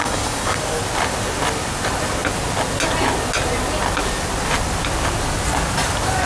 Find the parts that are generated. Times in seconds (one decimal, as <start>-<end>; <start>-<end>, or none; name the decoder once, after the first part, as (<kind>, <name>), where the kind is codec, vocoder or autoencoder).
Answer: 0.0-0.8 (codec, DAC)